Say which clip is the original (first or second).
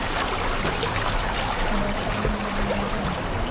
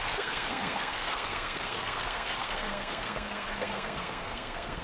first